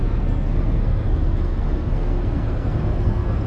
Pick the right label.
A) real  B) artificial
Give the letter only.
B